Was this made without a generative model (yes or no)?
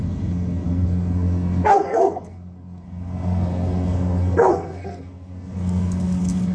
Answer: no